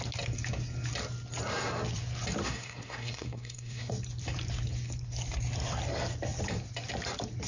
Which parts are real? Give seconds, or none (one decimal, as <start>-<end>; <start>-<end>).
0.0-2.4; 3.9-7.5